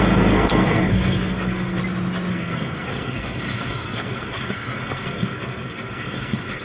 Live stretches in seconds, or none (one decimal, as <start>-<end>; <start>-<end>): 1.8-2.3